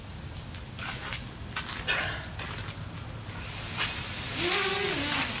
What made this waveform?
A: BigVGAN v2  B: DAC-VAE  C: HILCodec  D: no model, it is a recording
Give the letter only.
D